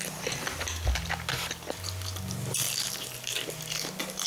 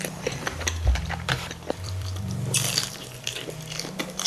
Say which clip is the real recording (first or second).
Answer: first